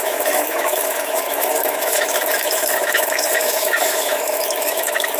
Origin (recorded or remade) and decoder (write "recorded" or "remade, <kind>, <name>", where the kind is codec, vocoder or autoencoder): remade, autoencoder, DAC-VAE